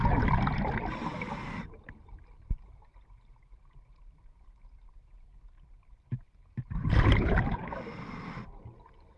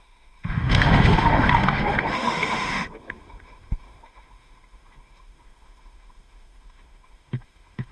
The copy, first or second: second